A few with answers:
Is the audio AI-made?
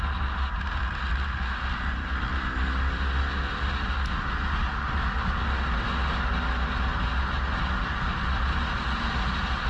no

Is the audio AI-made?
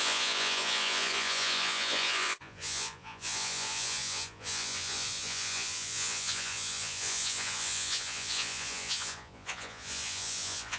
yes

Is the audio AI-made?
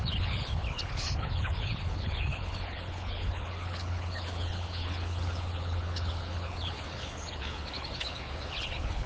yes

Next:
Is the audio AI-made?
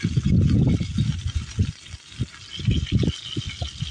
no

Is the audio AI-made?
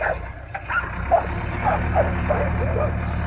no